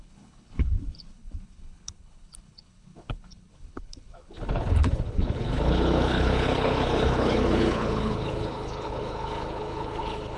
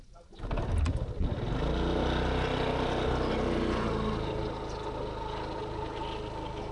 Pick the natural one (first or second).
second